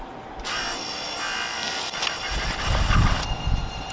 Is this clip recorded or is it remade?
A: recorded